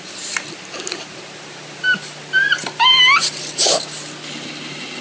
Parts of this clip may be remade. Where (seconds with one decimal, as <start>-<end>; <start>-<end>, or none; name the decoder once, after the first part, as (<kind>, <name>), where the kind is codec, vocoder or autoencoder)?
none